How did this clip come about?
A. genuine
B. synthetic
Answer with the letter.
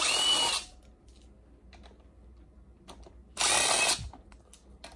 A